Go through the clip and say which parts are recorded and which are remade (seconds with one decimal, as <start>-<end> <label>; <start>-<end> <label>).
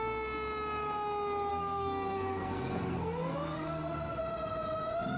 0.0-1.5 recorded; 1.5-4.2 remade; 4.2-5.2 recorded